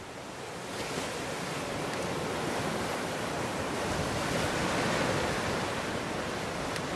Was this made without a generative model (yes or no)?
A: yes